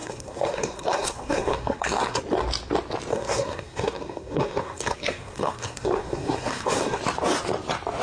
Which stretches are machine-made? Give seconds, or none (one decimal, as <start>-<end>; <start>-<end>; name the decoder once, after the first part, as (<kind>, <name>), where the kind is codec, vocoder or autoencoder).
0.0-2.2 (codec, SNAC); 3.1-7.0

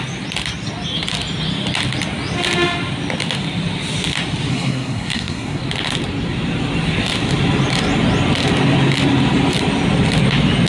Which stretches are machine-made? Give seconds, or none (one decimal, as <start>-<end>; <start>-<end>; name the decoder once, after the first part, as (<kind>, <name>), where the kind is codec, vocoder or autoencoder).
4.5-5.6 (codec, SNAC)